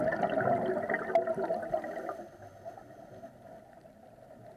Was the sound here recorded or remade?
recorded